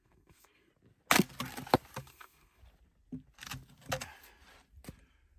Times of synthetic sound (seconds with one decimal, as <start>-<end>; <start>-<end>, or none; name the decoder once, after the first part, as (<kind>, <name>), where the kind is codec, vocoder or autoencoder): 0.0-0.7 (codec, SNAC); 2.0-2.6